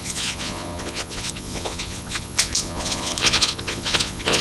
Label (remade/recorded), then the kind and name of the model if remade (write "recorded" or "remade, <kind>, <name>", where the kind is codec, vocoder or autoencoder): remade, vocoder, Vocos